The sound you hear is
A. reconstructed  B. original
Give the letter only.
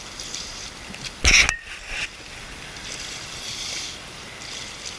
B